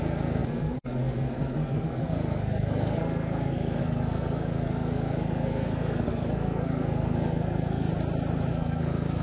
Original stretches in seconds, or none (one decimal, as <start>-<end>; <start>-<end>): 7.9-8.5